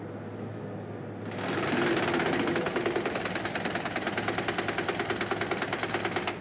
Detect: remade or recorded recorded